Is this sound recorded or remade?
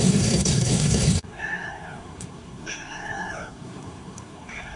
remade